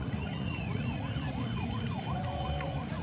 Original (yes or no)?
no